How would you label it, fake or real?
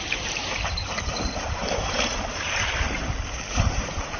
fake